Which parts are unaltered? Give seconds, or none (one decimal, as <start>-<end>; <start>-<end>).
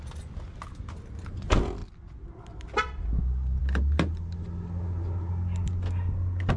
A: 0.0-6.6